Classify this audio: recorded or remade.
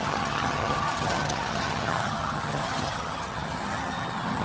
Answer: remade